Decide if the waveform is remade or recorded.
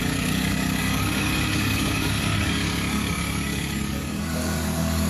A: remade